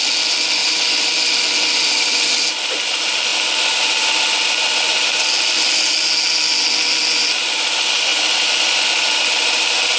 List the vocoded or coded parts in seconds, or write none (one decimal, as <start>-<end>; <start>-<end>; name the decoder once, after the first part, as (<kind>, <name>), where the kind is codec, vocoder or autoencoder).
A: 0.6-1.4 (vocoder, BigVGAN v2); 8.1-8.7